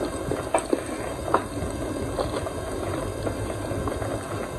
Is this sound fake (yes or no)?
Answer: no